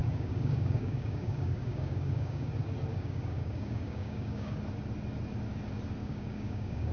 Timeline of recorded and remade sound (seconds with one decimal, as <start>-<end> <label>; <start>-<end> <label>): 0.0-2.5 remade; 2.5-2.9 recorded; 2.9-4.6 remade; 4.6-6.0 recorded; 6.0-6.9 remade